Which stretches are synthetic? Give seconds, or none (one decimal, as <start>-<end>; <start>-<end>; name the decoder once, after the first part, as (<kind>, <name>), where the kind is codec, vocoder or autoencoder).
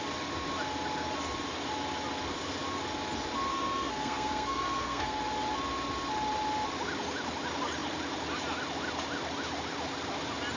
3.5-5.2 (codec, SNAC)